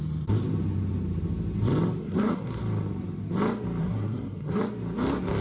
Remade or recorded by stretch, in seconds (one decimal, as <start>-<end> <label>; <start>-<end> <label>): 0.0-2.0 recorded; 2.0-2.6 remade; 2.6-3.8 recorded; 3.8-4.6 remade; 4.6-5.4 recorded